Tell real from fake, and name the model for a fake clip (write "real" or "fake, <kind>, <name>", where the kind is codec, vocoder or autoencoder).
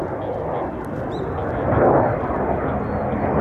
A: real